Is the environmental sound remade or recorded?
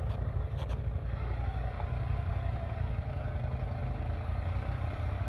remade